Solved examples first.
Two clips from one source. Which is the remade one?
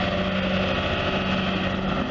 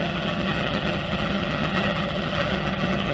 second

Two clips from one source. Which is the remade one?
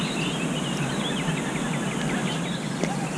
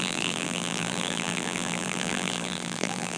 second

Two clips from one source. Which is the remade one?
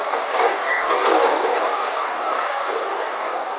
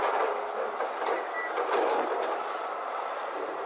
first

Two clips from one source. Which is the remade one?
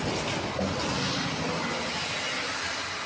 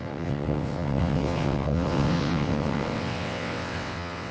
second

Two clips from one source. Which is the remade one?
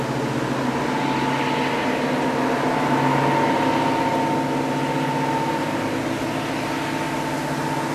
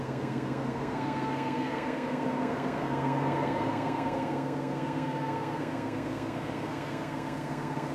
second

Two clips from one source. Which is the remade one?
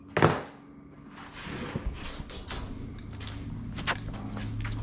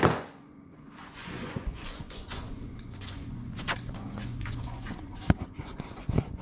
second